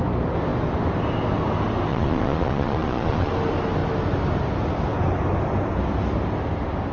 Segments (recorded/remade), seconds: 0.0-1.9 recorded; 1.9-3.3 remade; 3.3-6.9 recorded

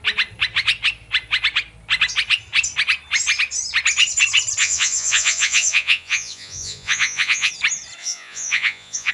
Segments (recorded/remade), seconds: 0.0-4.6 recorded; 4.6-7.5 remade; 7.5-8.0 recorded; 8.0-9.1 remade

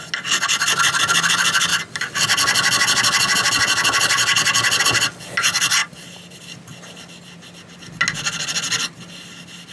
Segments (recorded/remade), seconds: 0.0-9.7 recorded

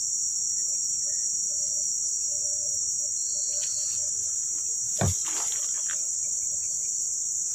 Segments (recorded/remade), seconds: 0.0-0.6 recorded; 0.6-1.3 remade; 1.3-2.5 recorded; 2.5-6.7 remade; 6.7-7.5 recorded